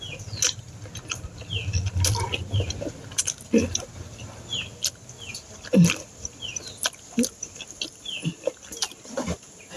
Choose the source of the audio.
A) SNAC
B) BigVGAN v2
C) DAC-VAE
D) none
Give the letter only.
D